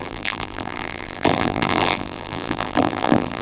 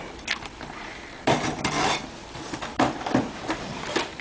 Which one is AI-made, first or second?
first